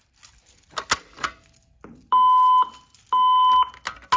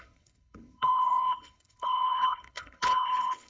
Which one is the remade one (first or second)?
second